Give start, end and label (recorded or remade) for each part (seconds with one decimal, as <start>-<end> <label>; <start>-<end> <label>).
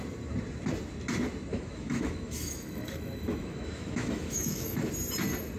0.0-1.5 recorded; 1.5-4.9 remade; 4.9-5.6 recorded